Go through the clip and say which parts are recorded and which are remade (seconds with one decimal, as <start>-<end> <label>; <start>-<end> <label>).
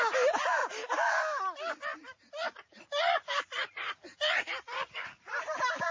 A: 0.0-0.6 remade; 0.6-2.3 recorded; 2.3-5.9 remade